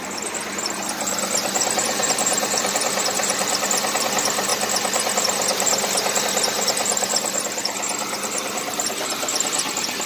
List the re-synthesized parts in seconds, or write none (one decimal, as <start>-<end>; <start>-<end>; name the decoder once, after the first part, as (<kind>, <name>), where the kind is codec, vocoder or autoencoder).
1.8-3.7 (vocoder, BigVGAN v2)